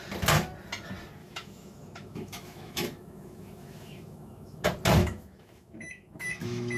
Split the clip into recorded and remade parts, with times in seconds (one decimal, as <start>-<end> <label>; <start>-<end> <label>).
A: 0.0-1.2 recorded; 1.2-4.6 remade; 4.6-5.0 recorded; 5.0-6.8 remade